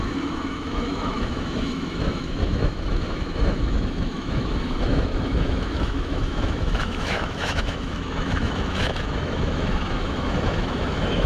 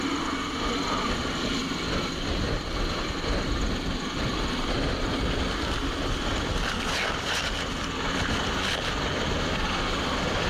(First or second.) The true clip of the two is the second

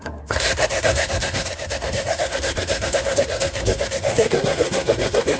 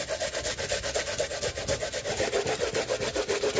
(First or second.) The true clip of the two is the second